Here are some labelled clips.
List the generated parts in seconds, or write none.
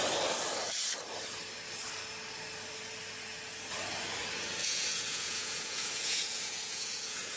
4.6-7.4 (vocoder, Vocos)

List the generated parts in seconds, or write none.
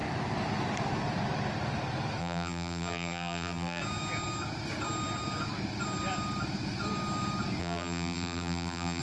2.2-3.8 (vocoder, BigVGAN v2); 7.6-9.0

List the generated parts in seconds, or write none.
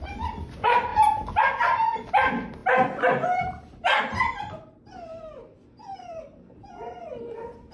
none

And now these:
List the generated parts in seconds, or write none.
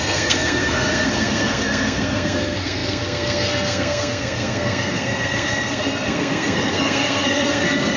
0.0-8.0 (codec, SNAC)